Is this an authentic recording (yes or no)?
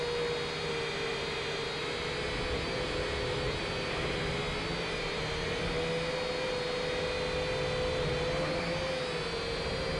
yes